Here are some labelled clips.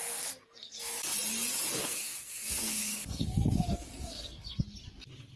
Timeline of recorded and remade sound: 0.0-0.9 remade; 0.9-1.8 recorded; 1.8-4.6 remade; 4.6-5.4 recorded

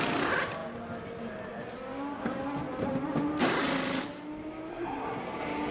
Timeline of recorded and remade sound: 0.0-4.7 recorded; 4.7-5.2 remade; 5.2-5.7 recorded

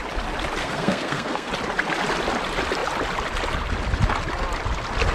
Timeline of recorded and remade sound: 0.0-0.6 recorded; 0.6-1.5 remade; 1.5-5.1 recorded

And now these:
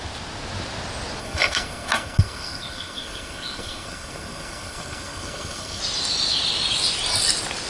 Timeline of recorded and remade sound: 0.0-1.2 recorded; 1.2-5.8 remade; 5.8-7.7 recorded

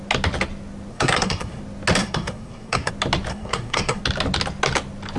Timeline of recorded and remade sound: 0.0-0.9 recorded; 0.9-1.6 remade; 1.6-2.0 recorded; 2.0-2.9 remade; 2.9-3.3 recorded; 3.3-4.0 remade; 4.0-5.2 recorded